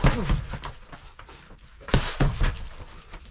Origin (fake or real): real